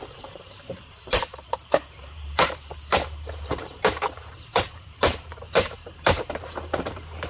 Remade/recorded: remade